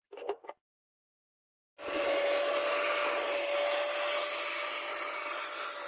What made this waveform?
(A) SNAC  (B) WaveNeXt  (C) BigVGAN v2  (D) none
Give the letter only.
D